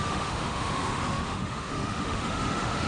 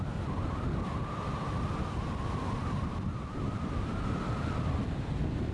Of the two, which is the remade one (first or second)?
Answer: first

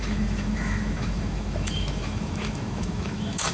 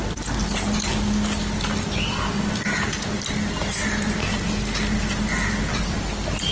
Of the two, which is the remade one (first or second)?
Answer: first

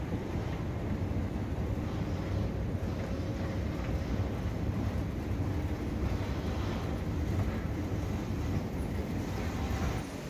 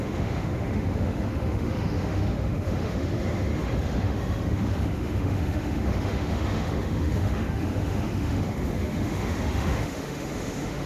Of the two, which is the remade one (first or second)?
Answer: second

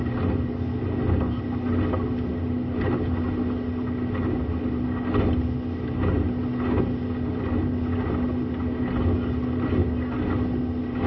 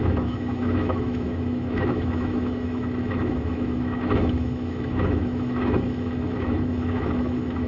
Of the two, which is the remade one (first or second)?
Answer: second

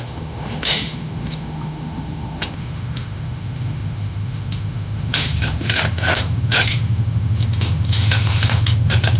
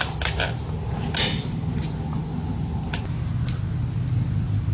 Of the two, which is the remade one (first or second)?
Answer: first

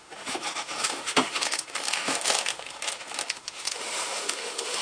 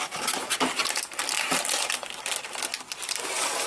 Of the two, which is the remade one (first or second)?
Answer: first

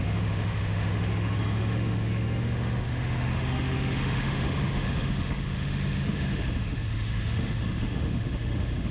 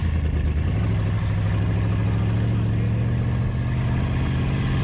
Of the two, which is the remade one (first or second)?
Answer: first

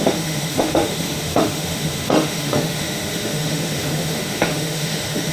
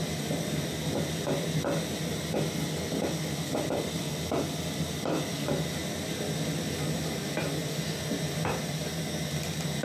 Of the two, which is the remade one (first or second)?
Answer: first